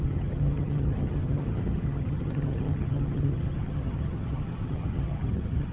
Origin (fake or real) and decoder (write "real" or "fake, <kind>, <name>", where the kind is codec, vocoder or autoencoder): fake, vocoder, HiFi-GAN